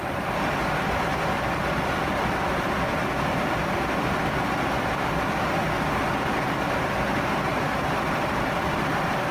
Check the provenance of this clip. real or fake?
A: fake